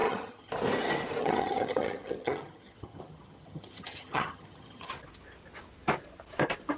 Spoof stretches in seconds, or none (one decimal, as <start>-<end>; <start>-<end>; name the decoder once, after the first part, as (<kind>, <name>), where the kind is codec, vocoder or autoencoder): 0.0-0.5 (vocoder, HiFi-GAN); 1.2-4.9